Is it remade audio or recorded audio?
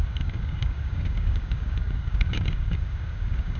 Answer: remade